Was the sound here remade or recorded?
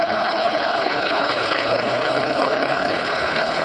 remade